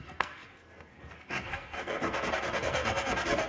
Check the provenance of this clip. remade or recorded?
remade